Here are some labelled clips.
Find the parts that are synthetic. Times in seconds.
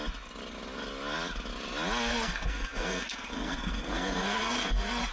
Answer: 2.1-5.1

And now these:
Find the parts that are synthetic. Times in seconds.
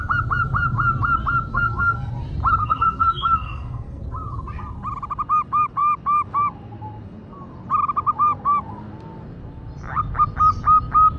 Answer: 1.5-2.1; 2.6-4.0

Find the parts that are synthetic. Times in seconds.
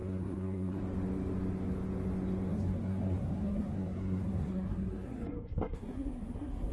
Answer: 0.0-0.8; 2.5-6.7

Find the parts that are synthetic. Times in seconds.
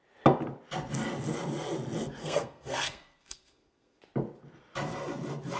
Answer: 2.2-4.0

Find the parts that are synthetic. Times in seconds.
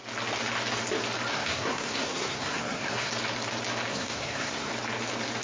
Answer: 1.3-3.1; 3.9-4.7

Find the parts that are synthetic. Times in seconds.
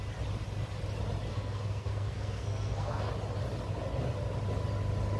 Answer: 1.3-3.1